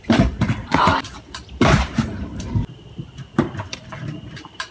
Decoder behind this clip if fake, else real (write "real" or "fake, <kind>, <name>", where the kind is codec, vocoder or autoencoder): fake, vocoder, BigVGAN v2